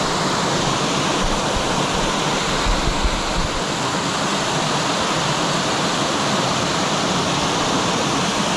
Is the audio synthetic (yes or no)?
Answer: no